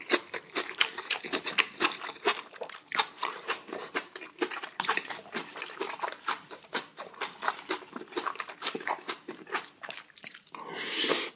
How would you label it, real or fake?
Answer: fake